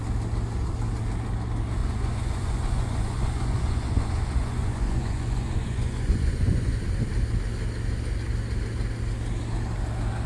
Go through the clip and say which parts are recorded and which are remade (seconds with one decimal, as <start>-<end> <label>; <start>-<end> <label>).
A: 0.0-1.8 recorded; 1.8-6.8 remade; 6.8-10.3 recorded